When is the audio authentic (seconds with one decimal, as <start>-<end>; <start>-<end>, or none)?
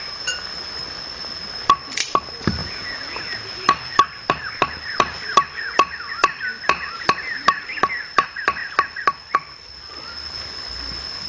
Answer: 0.0-2.6; 3.2-11.3